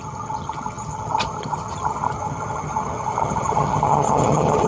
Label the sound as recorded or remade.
remade